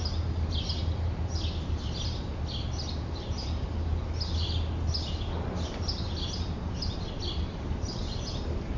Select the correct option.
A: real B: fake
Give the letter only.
A